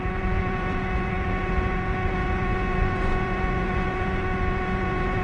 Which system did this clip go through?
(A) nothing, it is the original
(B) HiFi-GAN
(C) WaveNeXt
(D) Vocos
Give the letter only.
D